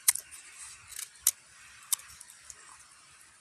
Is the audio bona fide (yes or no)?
yes